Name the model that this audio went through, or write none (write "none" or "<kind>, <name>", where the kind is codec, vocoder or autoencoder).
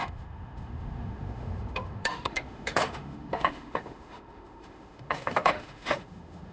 autoencoder, DAC-VAE